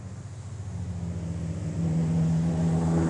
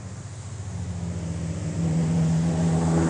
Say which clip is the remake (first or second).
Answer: second